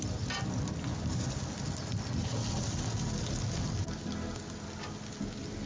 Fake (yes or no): no